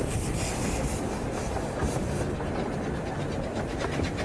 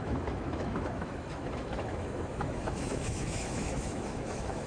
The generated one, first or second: second